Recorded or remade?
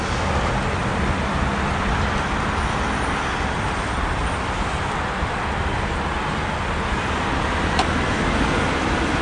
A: recorded